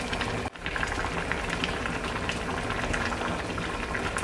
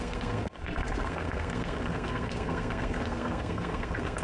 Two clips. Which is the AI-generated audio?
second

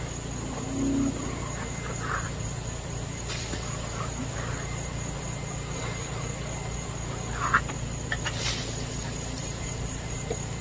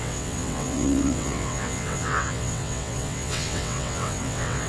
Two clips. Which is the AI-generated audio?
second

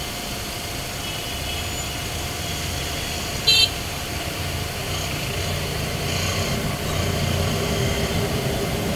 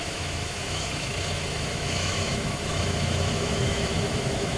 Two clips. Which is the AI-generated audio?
second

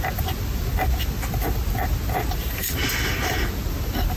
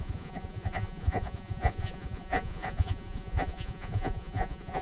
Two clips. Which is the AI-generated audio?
second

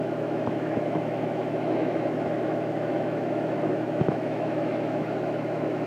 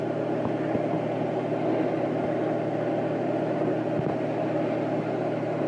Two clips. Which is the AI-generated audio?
first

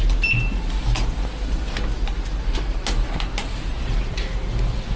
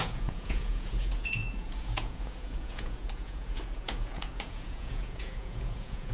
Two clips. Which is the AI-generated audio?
second